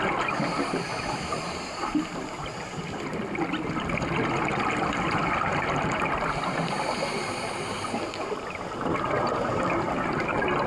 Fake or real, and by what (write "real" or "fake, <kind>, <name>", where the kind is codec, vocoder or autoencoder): real